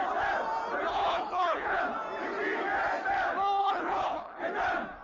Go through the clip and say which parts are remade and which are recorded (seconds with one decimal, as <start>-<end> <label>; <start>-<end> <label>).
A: 0.0-0.9 recorded; 0.9-1.8 remade; 1.8-3.6 recorded; 3.6-4.4 remade; 4.4-5.0 recorded